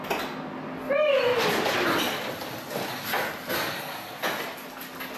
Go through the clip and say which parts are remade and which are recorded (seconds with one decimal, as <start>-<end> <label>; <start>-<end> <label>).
0.0-5.2 recorded